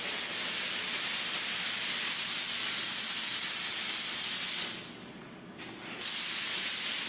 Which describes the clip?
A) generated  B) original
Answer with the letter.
B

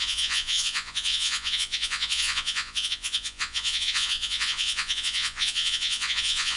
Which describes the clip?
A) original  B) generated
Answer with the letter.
B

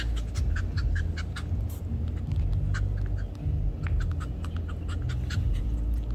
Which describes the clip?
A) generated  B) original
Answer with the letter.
B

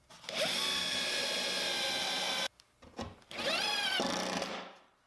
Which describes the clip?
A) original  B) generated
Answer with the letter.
A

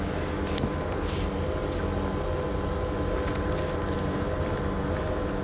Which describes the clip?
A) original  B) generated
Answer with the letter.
A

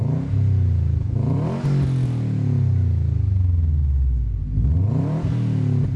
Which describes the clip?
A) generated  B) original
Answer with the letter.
B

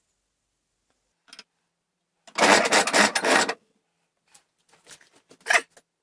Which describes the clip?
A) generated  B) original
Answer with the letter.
B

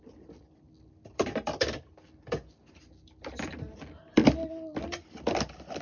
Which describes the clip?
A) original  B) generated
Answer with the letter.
A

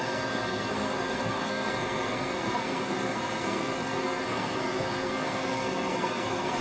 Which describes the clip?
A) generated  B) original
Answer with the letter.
A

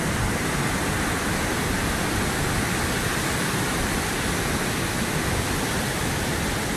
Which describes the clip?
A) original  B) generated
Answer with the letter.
A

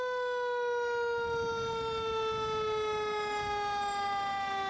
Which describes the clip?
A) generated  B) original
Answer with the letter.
B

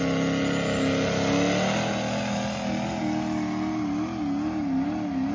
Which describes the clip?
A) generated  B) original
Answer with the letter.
B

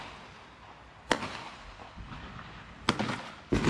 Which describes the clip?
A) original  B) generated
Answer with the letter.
A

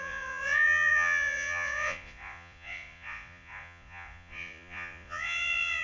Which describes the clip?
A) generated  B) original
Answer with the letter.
A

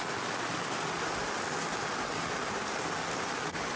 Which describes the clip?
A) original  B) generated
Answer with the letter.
A